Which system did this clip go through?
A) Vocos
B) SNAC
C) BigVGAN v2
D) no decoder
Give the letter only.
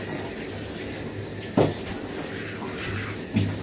D